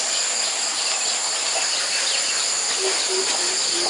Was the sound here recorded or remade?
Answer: recorded